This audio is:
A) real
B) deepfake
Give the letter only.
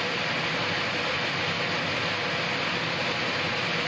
A